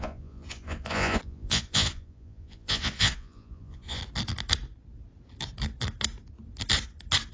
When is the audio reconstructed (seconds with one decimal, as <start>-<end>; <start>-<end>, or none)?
0.0-4.0